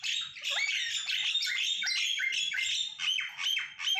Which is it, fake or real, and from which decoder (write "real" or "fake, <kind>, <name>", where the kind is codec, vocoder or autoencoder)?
real